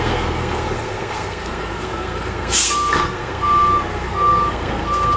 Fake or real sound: fake